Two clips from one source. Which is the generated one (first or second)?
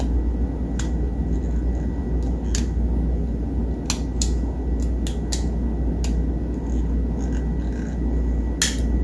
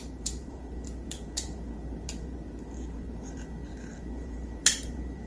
second